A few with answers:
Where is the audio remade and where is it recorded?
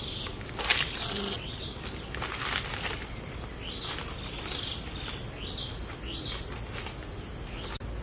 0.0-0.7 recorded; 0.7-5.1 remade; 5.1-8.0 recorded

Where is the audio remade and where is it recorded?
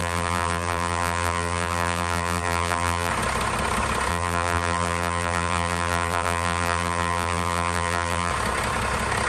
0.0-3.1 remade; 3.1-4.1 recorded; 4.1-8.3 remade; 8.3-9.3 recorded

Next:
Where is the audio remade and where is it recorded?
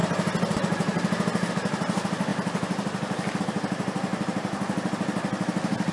0.0-1.5 recorded; 1.5-2.3 remade; 2.3-3.4 recorded; 3.4-4.1 remade; 4.1-5.9 recorded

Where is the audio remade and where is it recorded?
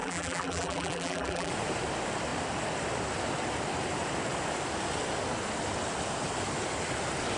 0.0-1.5 remade; 1.5-7.4 recorded